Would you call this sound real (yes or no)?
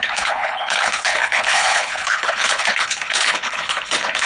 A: no